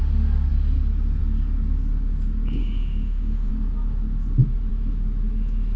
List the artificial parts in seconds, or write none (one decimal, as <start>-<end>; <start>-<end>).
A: 2.6-3.5